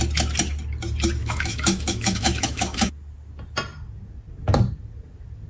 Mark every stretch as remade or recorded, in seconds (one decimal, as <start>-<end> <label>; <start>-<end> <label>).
0.0-1.2 recorded; 1.2-2.9 remade; 2.9-5.5 recorded